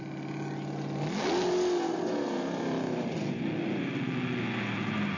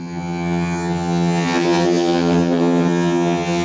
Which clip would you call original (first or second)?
first